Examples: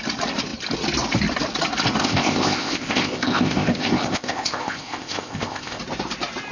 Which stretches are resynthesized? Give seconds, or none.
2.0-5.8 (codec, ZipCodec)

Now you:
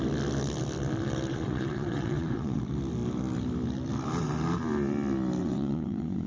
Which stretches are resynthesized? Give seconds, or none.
1.3-2.6 (vocoder, WaveNeXt); 5.4-6.3

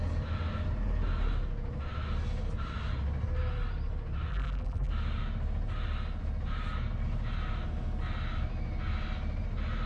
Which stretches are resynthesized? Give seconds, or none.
4.3-4.9 (vocoder, BigVGAN v2)

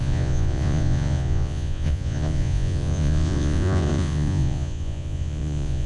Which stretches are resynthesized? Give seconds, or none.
0.0-5.9 (vocoder, Vocos)

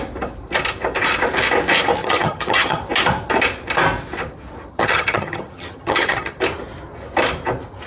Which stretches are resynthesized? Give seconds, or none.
2.0-2.8 (vocoder, HiFi-GAN); 4.7-6.4